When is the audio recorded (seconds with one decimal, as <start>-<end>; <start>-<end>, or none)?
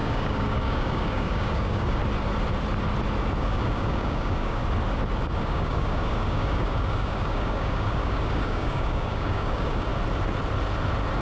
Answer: 2.0-3.4; 4.6-5.4; 9.9-11.2